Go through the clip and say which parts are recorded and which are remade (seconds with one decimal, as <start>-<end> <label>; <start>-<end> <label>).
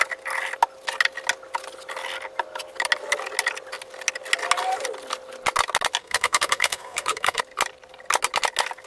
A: 0.0-6.0 recorded; 6.0-7.4 remade; 7.4-8.9 recorded